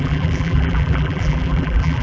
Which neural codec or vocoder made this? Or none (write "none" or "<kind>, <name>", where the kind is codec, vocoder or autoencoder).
vocoder, BigVGAN v2